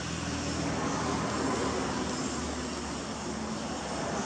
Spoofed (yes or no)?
no